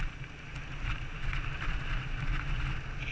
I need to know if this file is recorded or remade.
recorded